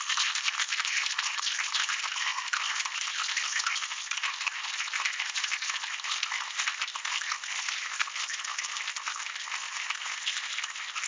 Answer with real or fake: fake